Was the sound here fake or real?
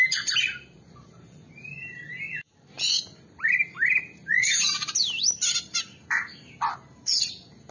fake